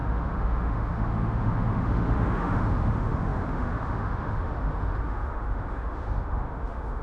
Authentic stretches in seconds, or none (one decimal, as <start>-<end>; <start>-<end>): none